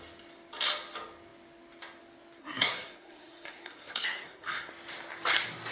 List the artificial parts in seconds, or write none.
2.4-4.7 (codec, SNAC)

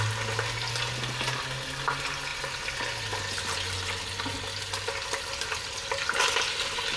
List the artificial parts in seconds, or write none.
none

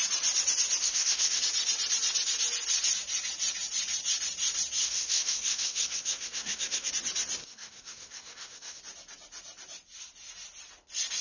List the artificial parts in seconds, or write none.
0.8-1.4 (codec, SNAC); 4.8-6.9; 7.4-8.8

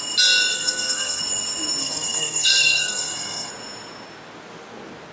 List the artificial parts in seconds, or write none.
0.5-1.2 (codec, SNAC); 1.8-3.5

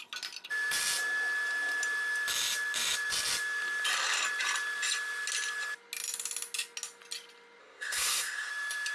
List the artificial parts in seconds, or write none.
7.6-8.5 (codec, SNAC)